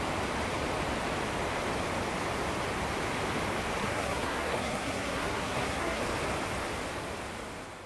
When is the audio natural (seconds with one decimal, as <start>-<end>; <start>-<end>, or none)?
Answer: 0.0-3.8; 6.0-7.9